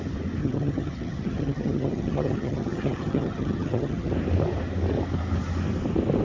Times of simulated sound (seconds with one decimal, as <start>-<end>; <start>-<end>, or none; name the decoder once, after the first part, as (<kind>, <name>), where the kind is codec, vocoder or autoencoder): 0.4-4.1 (vocoder, HiFi-GAN)